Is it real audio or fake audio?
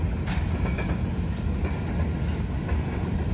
real